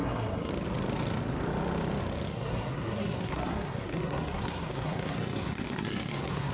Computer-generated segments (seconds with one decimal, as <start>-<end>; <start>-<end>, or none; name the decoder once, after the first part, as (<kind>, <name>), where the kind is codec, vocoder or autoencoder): 0.0-0.5 (codec, SNAC); 2.3-6.5